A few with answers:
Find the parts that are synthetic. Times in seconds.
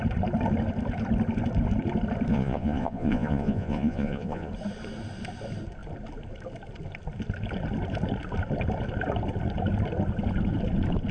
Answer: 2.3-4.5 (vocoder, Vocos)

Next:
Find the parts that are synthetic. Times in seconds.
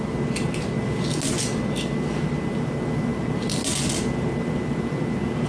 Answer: none